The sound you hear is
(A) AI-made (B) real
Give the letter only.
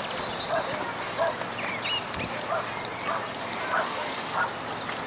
B